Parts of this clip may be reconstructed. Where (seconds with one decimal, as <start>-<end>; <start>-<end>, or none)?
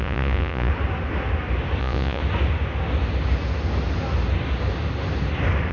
0.0-0.7; 1.8-2.2